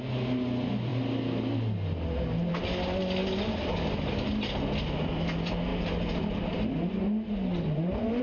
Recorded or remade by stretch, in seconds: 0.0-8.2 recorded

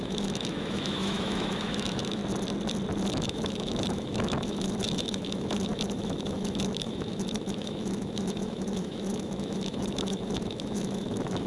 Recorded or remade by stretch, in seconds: 0.0-2.2 remade; 2.2-3.1 recorded; 3.1-11.5 remade

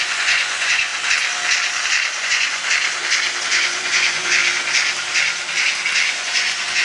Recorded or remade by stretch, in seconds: 0.0-0.9 remade; 0.9-2.2 recorded; 2.2-2.6 remade; 2.6-3.5 recorded; 3.5-4.4 remade; 4.4-6.1 recorded; 6.1-6.8 remade